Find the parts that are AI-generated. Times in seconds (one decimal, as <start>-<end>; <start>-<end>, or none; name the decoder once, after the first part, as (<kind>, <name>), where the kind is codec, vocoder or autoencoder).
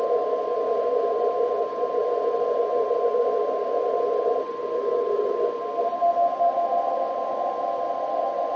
none